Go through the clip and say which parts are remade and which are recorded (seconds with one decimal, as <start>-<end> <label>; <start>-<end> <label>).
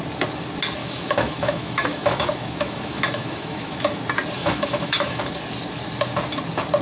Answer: 0.0-0.8 recorded; 0.8-4.0 remade; 4.0-4.4 recorded; 4.4-5.2 remade; 5.2-6.8 recorded